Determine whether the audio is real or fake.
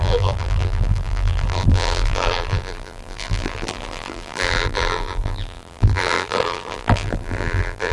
fake